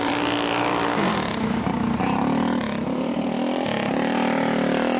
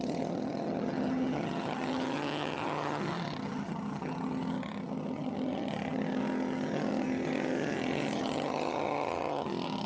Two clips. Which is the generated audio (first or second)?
second